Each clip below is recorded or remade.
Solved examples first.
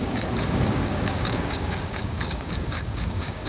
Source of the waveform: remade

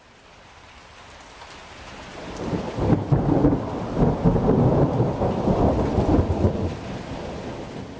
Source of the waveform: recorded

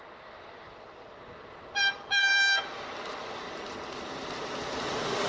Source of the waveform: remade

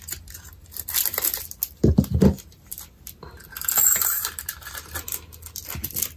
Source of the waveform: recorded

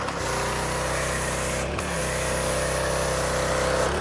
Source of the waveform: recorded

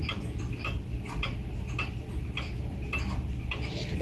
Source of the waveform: recorded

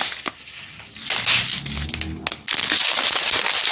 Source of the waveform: recorded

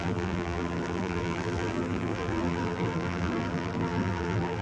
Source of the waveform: remade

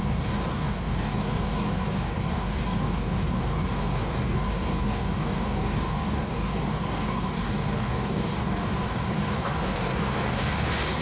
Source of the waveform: remade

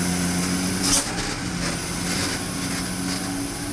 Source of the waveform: recorded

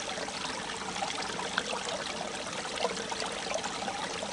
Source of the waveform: recorded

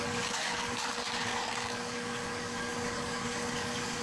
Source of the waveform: remade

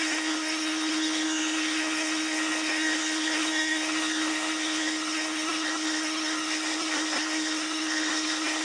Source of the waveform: remade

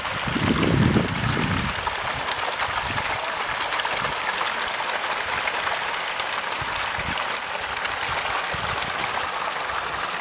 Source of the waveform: recorded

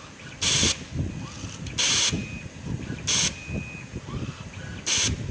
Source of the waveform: recorded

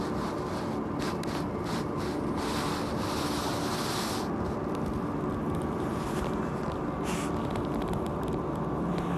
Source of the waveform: recorded